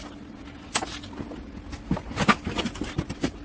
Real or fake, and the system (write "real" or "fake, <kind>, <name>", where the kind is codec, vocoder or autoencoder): real